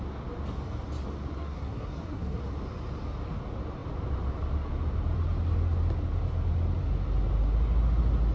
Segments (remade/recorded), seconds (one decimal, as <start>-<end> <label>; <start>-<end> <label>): 0.0-1.3 recorded; 1.3-2.4 remade; 2.4-8.3 recorded